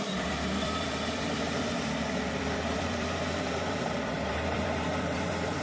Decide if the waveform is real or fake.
fake